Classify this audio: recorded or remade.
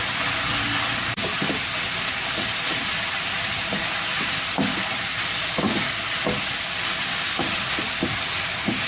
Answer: recorded